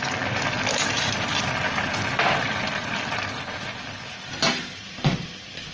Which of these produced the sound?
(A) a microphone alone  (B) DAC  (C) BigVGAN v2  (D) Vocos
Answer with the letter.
A